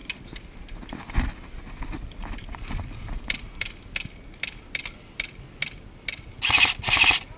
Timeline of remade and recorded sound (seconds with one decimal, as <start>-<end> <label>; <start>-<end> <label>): 0.0-7.4 recorded